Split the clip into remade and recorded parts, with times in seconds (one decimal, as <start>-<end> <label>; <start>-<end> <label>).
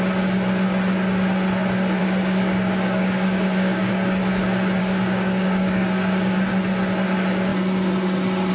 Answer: 0.0-2.0 recorded; 2.0-3.9 remade; 3.9-4.8 recorded; 4.8-6.5 remade; 6.5-8.5 recorded